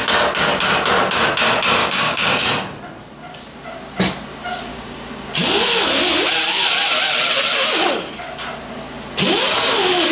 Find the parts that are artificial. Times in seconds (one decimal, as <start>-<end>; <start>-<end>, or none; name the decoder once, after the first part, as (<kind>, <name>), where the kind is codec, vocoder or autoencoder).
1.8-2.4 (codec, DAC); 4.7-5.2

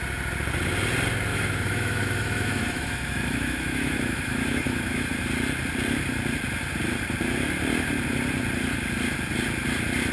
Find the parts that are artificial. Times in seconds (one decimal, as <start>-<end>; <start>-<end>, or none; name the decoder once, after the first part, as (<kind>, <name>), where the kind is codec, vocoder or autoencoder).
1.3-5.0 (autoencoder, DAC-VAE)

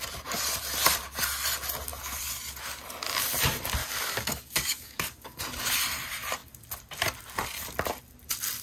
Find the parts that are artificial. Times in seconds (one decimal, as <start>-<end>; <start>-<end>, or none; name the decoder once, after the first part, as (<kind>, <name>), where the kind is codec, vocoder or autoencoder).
3.8-5.4 (codec, DAC)

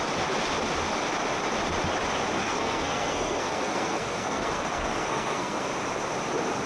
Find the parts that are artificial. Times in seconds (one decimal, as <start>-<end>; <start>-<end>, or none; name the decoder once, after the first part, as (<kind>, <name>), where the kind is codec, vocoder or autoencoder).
2.4-5.7 (codec, SNAC)

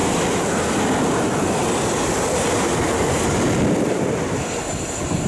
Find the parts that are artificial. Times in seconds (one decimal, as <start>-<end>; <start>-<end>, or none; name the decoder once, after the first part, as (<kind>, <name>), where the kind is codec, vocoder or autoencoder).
none

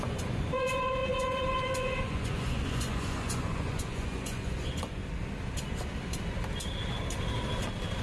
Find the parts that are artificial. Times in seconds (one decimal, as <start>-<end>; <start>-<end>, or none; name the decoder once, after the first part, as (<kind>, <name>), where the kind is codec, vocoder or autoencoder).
0.0-5.0 (vocoder, Vocos)

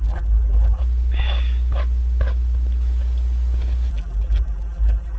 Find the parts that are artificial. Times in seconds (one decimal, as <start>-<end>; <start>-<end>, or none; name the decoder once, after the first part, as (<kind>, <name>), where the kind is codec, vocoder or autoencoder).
0.0-0.8 (vocoder, BigVGAN v2); 3.9-5.2